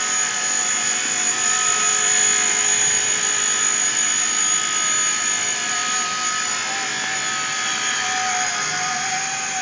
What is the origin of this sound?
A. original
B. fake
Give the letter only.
A